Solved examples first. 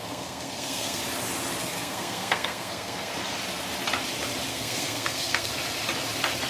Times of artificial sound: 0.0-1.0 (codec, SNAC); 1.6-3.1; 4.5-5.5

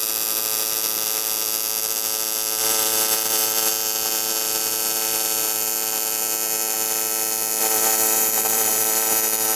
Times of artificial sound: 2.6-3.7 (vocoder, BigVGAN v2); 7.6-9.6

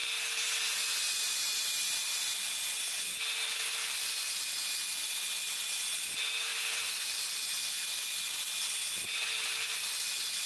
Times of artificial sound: 1.4-3.8 (vocoder, BigVGAN v2); 4.9-6.5; 8.0-10.5